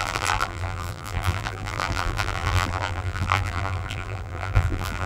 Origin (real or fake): fake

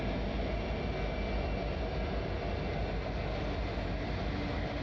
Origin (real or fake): real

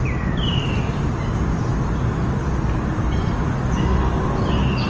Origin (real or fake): real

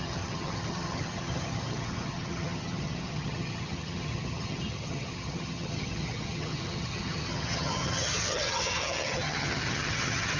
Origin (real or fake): fake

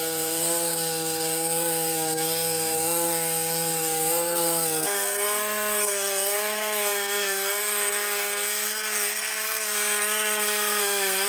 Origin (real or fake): fake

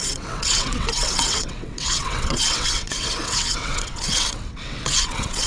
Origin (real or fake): fake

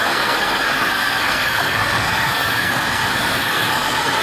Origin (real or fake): fake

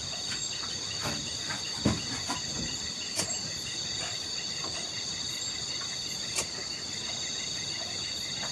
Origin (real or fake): fake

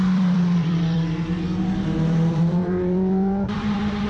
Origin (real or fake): fake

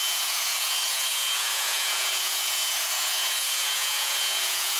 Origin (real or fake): fake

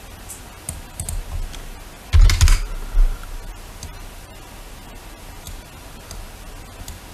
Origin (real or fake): real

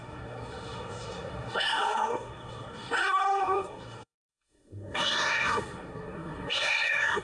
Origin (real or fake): fake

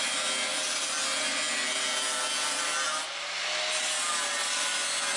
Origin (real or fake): real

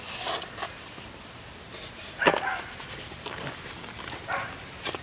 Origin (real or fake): real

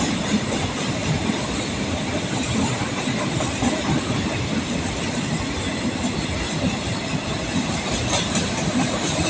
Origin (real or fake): real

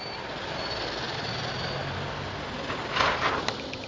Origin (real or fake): real